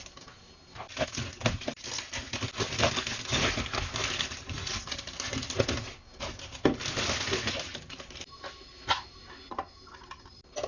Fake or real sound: real